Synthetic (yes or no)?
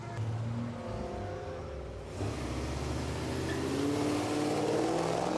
no